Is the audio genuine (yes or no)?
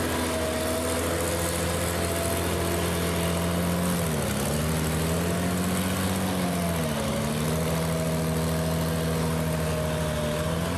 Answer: yes